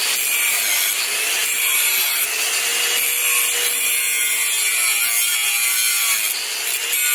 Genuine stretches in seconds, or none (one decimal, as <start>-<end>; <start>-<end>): 0.0-1.4; 2.2-7.1